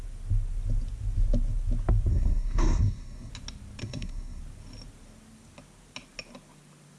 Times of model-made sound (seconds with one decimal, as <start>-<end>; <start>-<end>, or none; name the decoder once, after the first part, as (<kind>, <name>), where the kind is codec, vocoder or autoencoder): 2.1-3.3 (codec, SNAC); 3.8-4.4